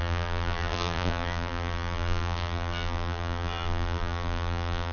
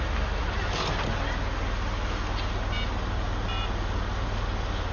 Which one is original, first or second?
second